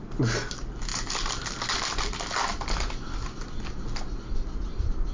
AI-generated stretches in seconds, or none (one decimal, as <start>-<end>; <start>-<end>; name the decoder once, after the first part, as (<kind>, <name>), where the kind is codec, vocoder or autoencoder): none